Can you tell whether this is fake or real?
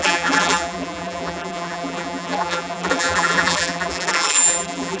fake